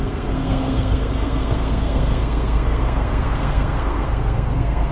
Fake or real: fake